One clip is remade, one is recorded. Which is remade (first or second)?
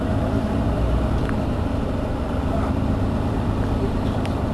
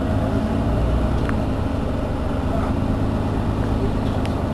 first